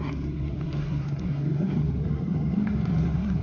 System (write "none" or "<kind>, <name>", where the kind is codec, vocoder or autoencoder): codec, SNAC